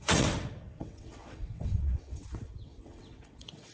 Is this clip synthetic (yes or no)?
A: yes